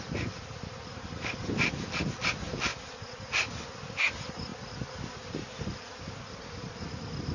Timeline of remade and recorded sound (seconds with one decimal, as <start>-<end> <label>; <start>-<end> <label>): 0.0-7.3 recorded

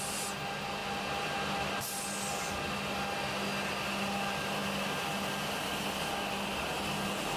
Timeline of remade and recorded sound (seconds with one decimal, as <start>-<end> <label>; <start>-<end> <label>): 0.0-7.4 recorded

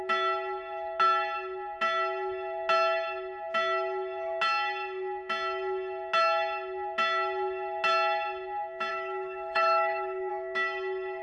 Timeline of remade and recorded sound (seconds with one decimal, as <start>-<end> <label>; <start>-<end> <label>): 0.0-8.9 recorded; 8.9-10.3 remade; 10.3-11.2 recorded

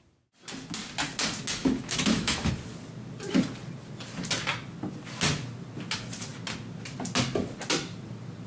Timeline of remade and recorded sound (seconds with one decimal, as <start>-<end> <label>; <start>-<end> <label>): 0.0-1.6 recorded; 1.6-2.5 remade; 2.5-8.5 recorded

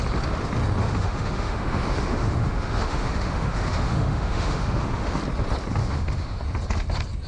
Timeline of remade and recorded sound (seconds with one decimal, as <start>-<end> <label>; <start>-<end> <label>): 0.0-0.8 recorded; 0.8-5.2 remade; 5.2-5.8 recorded; 5.8-6.4 remade; 6.4-7.3 recorded